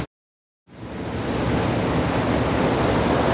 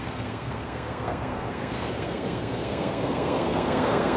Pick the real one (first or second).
first